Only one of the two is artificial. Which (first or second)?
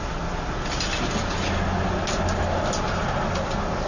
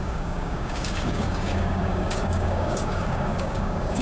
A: second